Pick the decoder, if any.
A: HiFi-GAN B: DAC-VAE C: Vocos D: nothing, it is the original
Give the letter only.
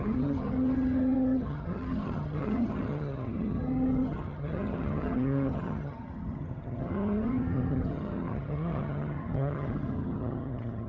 A